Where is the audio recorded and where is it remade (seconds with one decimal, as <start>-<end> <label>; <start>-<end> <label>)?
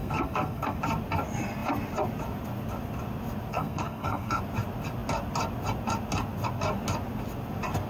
0.0-0.8 remade; 0.8-3.5 recorded; 3.5-4.4 remade; 4.4-7.9 recorded